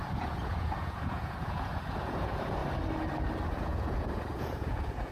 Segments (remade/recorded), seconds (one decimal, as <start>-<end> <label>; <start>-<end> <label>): 0.0-2.6 remade; 2.6-3.5 recorded; 3.5-5.1 remade